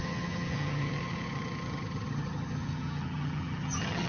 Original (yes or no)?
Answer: no